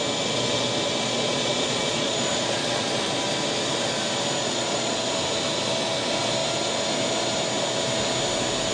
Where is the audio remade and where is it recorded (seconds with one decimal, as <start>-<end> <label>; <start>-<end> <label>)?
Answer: 0.0-1.0 recorded; 1.0-2.8 remade; 2.8-4.4 recorded; 4.4-5.0 remade; 5.0-8.7 recorded